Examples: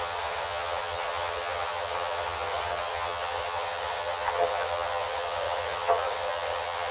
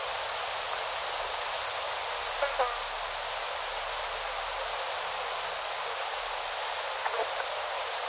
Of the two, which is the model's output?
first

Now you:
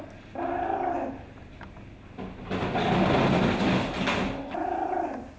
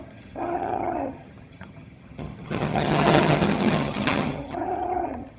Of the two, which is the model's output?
second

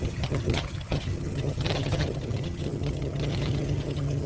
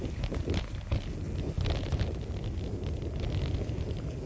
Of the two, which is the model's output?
first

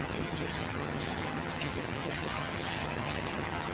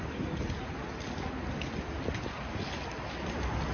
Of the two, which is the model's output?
first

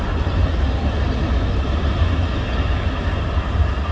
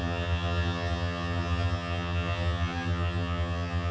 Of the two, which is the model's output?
second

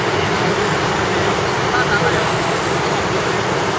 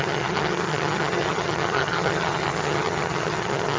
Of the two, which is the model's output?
second